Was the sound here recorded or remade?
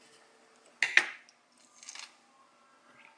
recorded